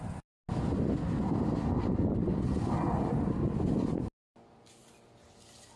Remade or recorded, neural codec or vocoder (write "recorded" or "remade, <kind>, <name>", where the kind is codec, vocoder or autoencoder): recorded